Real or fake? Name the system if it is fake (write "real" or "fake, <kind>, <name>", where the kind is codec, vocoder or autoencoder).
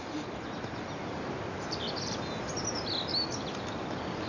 real